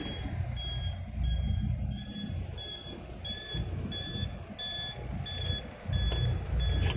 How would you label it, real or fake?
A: real